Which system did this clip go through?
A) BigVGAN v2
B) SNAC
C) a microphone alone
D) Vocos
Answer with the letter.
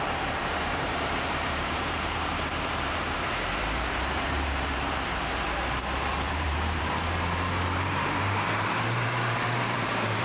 A